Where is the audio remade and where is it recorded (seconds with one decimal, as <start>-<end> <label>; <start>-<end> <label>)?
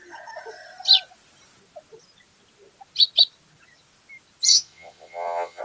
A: 0.0-4.5 recorded; 4.5-5.6 remade